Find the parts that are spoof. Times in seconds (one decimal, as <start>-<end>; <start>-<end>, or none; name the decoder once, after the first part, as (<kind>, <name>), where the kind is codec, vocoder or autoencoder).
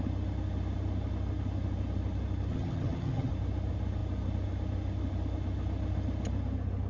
2.5-3.3 (vocoder, HiFi-GAN)